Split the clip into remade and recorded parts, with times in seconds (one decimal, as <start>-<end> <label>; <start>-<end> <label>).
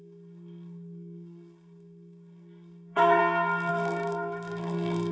0.0-3.2 remade; 3.2-3.7 recorded; 3.7-5.1 remade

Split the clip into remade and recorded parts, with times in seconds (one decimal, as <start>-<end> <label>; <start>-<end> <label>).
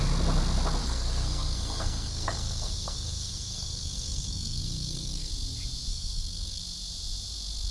0.0-0.8 recorded; 0.8-5.3 remade; 5.3-5.9 recorded; 5.9-6.6 remade; 6.6-7.7 recorded